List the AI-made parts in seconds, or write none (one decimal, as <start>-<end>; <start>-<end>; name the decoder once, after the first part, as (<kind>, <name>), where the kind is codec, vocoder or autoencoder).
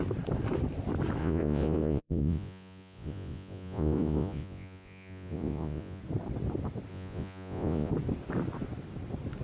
1.2-6.0 (vocoder, Vocos); 6.9-7.9